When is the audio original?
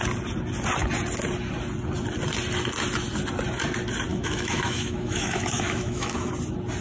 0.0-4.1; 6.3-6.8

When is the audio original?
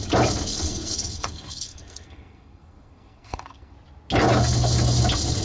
0.0-0.5; 3.7-5.4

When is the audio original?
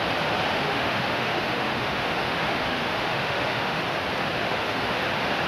0.0-0.5; 3.8-4.4; 5.0-5.5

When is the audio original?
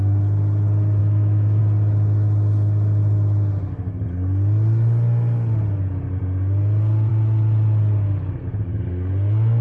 0.0-1.0; 1.6-9.6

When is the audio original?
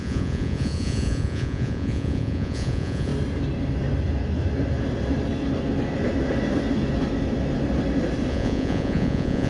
3.1-8.3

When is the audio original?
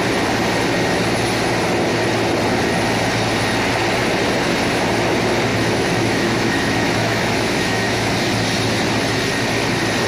0.0-5.5; 8.1-10.1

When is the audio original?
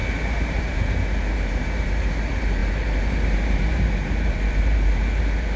none